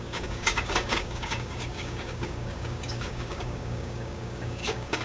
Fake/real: fake